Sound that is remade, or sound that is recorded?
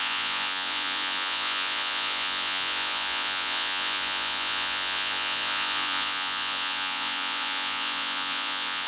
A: remade